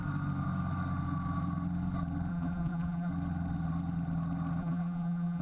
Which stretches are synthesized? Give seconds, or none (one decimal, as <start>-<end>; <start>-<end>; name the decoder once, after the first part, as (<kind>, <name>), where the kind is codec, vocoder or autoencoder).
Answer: 2.3-3.1 (vocoder, BigVGAN v2); 4.6-5.4